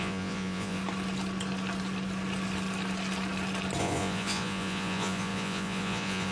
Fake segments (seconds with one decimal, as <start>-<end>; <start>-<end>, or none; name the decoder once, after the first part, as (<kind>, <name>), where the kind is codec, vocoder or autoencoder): 0.0-0.8 (vocoder, Vocos); 3.8-6.3